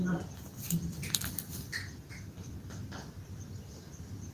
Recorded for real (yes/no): yes